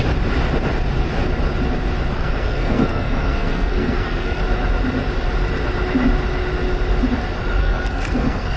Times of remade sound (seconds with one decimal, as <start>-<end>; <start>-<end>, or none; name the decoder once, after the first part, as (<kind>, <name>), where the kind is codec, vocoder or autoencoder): 2.1-4.4 (codec, SNAC); 7.6-8.6